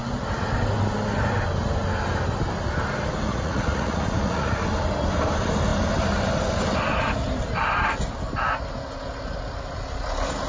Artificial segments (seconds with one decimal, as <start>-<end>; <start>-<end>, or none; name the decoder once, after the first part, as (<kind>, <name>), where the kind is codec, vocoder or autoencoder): 3.3-4.6 (vocoder, Vocos)